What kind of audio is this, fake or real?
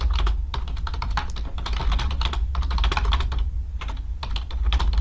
real